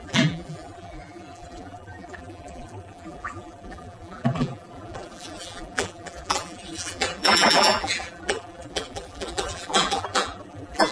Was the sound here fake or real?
fake